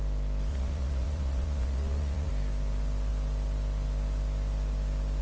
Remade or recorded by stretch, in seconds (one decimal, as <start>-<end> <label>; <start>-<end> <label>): 0.0-0.5 recorded; 0.5-2.3 remade; 2.3-5.2 recorded